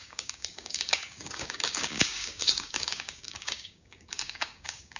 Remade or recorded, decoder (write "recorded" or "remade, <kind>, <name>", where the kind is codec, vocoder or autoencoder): remade, codec, DAC